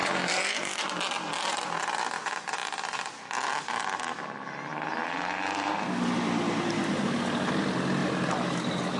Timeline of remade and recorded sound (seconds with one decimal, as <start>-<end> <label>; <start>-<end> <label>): 0.0-1.8 remade; 1.8-8.0 recorded; 8.0-9.0 remade